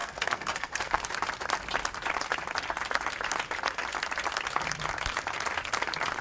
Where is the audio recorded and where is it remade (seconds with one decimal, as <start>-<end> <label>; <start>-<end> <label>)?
0.0-1.0 remade; 1.0-6.2 recorded